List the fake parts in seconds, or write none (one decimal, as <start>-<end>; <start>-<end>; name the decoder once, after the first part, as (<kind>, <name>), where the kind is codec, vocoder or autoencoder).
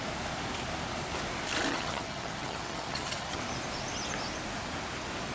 1.7-3.4 (vocoder, HiFi-GAN)